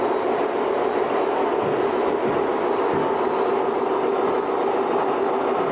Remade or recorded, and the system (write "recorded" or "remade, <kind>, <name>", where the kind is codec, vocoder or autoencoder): recorded